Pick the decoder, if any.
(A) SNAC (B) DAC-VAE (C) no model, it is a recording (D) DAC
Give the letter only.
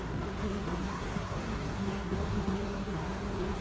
A